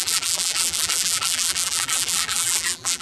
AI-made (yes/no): yes